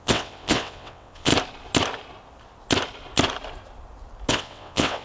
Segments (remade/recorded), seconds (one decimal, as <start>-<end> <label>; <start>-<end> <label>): 0.0-1.3 remade; 1.3-4.3 recorded; 4.3-5.0 remade